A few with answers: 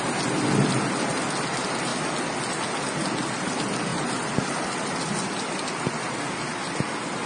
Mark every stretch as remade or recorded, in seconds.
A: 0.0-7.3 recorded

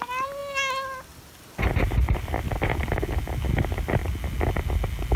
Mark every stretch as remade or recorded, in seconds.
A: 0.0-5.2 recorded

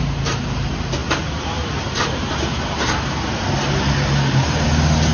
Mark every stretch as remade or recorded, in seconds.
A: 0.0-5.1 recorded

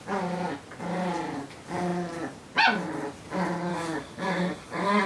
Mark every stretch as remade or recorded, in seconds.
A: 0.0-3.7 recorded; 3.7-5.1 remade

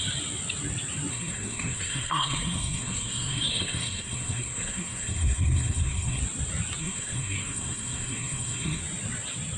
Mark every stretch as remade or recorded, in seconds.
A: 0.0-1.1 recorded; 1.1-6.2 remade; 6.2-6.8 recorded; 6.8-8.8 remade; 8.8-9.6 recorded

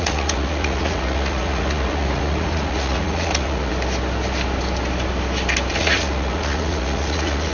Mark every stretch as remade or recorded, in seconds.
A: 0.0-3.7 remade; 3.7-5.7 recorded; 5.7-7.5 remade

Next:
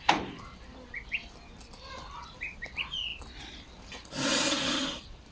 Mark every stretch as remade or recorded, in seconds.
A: 0.0-5.3 recorded